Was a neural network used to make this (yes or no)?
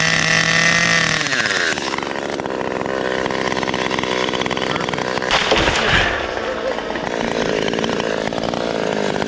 no